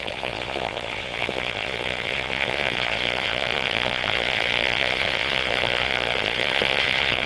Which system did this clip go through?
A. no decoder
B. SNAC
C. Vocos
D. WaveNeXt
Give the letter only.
C